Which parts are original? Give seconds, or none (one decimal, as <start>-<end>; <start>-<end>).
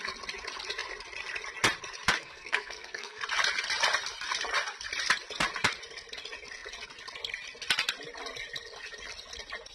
0.0-2.2; 3.2-9.7